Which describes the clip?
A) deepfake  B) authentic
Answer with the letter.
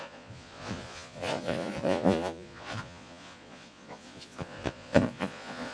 A